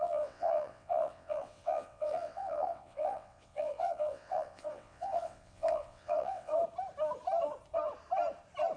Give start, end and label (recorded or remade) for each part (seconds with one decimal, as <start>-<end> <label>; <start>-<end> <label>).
0.0-6.5 remade; 6.5-8.8 recorded